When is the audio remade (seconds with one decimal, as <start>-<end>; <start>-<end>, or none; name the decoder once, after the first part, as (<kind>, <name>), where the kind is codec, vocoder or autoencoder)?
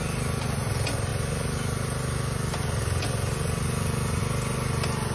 none